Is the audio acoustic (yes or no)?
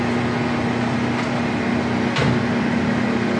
yes